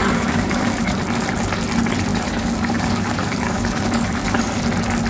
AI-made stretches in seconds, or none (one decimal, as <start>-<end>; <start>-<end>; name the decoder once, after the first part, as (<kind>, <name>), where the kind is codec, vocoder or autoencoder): 0.0-0.9 (codec, DAC); 2.1-4.6